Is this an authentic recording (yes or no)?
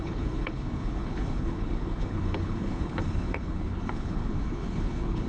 no